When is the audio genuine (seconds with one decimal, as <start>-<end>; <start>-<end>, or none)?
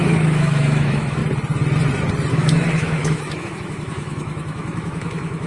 1.2-2.3